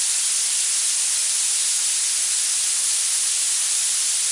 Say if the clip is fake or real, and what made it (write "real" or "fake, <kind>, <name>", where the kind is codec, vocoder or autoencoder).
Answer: real